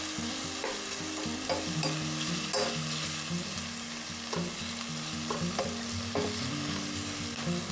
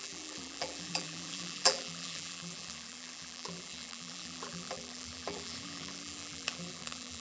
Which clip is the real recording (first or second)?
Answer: first